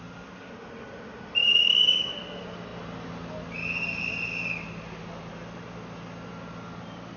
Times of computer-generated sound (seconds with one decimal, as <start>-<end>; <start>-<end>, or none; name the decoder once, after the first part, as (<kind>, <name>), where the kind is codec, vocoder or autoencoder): 1.4-2.1 (codec, DAC)